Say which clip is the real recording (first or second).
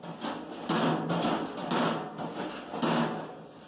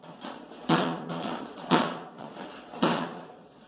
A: first